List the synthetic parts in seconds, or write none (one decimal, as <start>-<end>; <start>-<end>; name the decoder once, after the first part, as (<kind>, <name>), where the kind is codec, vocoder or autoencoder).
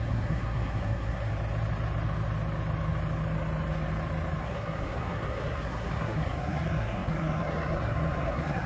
0.0-1.3 (codec, SNAC); 4.4-8.7